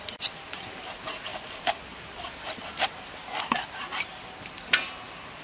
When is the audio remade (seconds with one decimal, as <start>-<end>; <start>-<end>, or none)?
1.3-4.5